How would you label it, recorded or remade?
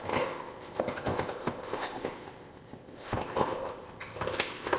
remade